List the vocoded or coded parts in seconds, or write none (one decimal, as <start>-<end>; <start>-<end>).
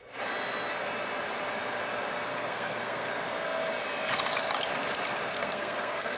2.3-3.1; 5.3-6.2